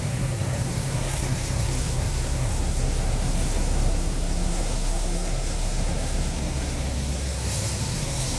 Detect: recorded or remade remade